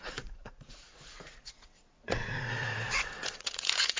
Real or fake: fake